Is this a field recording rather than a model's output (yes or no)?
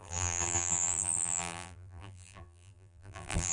no